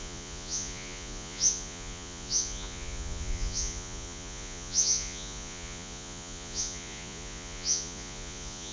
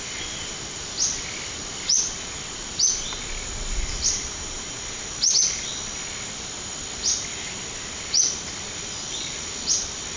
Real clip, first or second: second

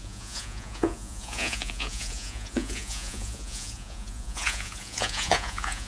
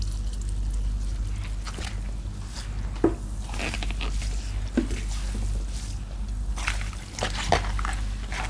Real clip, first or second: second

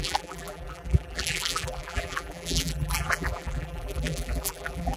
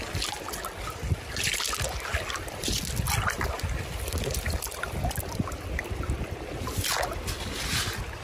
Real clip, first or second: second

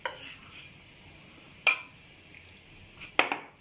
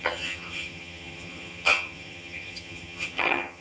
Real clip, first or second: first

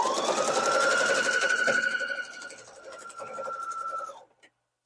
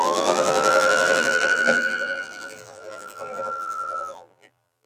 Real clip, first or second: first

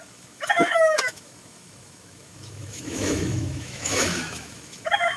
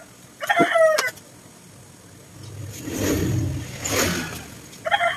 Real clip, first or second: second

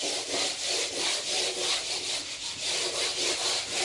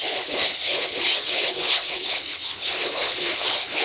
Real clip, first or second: first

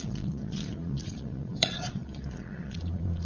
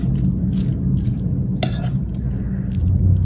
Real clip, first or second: second